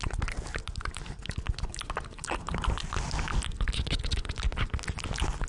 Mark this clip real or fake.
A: real